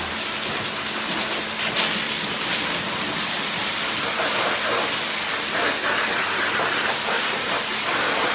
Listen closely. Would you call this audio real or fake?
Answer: real